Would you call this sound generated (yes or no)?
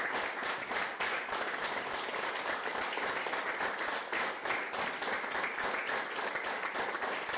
no